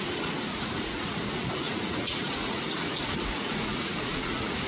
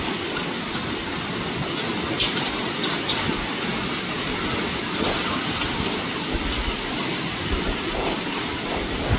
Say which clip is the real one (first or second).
second